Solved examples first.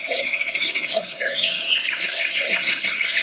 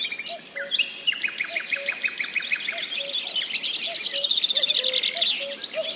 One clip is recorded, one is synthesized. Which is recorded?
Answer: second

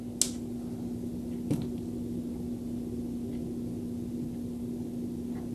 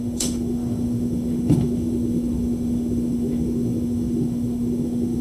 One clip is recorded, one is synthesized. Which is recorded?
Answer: first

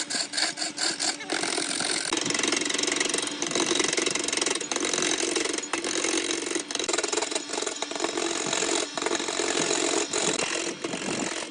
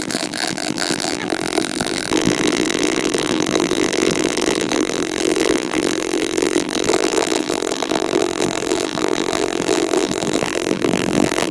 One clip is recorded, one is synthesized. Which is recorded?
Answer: first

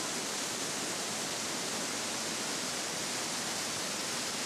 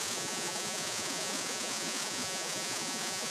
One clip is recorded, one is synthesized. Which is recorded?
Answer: first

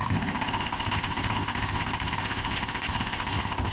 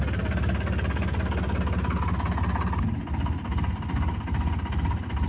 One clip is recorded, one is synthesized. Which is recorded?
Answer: second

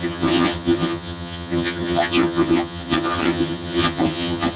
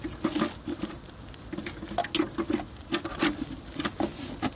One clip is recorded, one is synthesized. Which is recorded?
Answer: second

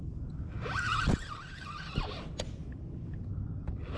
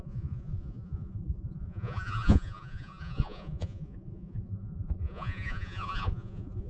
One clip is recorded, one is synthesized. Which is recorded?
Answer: first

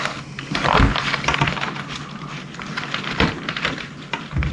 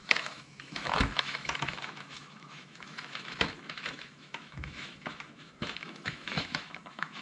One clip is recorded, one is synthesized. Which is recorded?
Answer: first